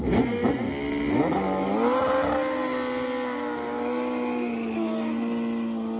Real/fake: real